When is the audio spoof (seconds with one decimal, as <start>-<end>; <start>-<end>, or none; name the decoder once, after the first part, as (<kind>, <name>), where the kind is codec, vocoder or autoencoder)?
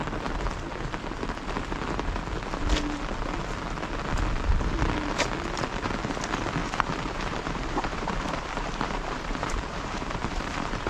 6.6-10.9 (vocoder, BigVGAN v2)